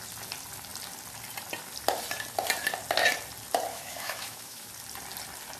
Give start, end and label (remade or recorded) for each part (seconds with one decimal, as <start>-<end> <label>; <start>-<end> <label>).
0.0-3.7 recorded; 3.7-4.7 remade; 4.7-5.6 recorded